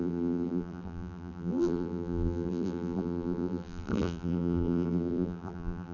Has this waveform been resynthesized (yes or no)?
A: yes